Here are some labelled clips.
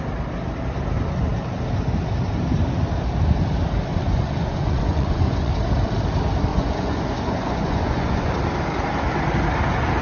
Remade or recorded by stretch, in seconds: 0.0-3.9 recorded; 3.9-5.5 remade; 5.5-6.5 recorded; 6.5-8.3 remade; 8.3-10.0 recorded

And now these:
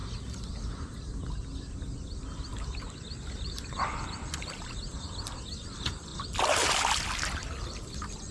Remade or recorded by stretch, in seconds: 0.0-8.3 recorded

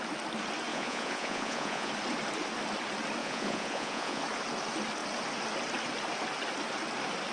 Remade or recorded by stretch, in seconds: 0.0-0.7 recorded; 0.7-1.9 remade; 1.9-3.2 recorded; 3.2-4.2 remade; 4.2-7.3 recorded

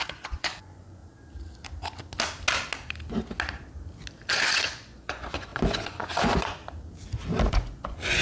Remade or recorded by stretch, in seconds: 0.0-1.0 remade; 1.0-4.3 recorded; 4.3-6.6 remade; 6.6-7.5 recorded; 7.5-8.2 remade

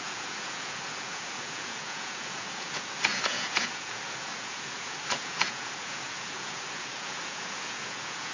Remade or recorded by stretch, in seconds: 0.0-8.3 remade